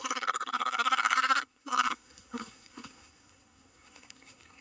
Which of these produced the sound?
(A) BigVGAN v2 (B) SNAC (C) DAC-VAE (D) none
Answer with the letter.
B